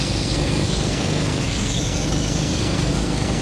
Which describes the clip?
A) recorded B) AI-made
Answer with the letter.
B